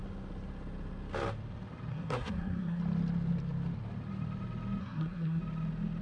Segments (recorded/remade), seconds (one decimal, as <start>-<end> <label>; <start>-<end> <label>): 0.0-1.9 recorded; 1.9-2.8 remade; 2.8-4.8 recorded; 4.8-5.4 remade; 5.4-6.0 recorded